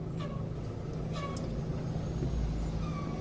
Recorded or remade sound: recorded